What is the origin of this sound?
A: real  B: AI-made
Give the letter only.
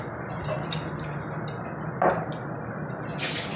A